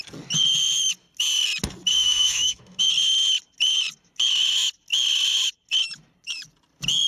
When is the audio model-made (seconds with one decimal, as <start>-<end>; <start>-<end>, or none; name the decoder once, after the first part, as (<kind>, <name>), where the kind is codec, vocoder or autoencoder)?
1.9-2.8 (autoencoder, DAC-VAE)